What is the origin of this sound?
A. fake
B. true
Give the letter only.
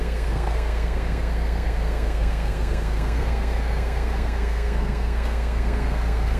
A